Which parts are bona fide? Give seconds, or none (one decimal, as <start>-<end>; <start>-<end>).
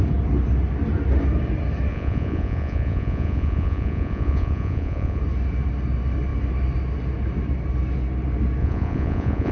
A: 0.0-1.9; 5.2-8.6